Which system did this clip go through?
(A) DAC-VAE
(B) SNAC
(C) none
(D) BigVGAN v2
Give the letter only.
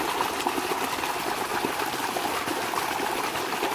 D